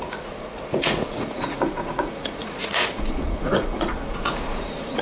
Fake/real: fake